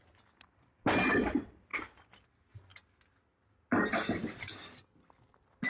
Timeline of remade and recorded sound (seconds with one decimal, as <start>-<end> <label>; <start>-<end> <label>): 0.0-5.7 recorded